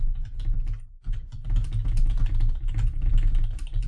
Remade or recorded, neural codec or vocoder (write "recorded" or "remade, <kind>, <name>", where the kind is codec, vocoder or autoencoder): recorded